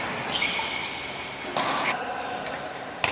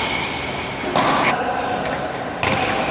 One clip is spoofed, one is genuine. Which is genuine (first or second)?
first